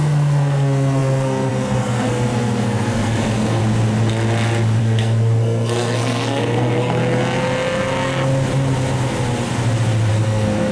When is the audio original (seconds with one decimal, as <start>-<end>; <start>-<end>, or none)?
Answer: 3.6-4.8; 7.0-10.1